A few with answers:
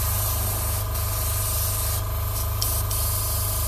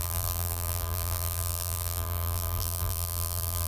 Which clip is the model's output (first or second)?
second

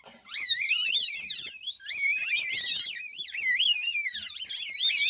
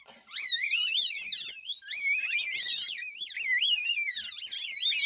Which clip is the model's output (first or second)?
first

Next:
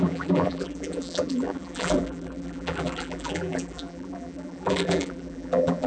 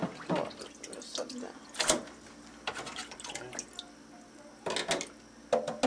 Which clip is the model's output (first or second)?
first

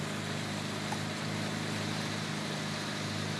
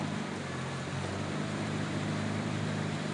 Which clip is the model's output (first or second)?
second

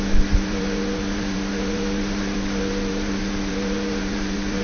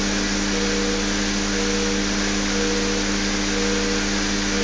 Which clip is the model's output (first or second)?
first